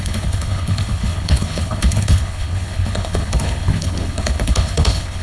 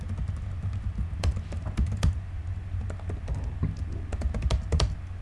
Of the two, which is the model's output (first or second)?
first